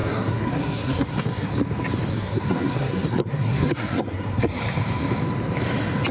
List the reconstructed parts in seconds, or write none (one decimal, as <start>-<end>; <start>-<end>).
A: 0.0-1.5; 2.1-4.6